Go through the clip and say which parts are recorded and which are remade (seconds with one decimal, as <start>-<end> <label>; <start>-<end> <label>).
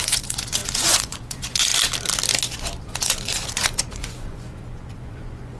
0.0-1.7 remade; 1.7-2.8 recorded; 2.8-5.6 remade